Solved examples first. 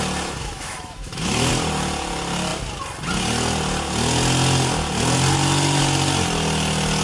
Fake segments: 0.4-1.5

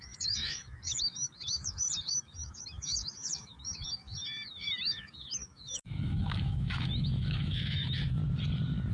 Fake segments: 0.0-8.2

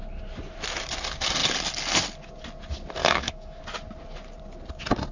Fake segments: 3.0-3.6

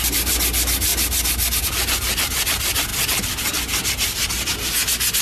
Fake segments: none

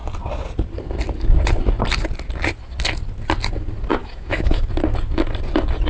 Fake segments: 4.0-4.7